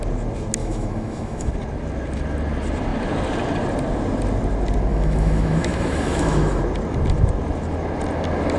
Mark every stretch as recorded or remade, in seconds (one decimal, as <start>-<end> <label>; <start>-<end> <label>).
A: 0.0-0.6 recorded; 0.6-1.5 remade; 1.5-4.9 recorded; 4.9-6.6 remade; 6.6-8.6 recorded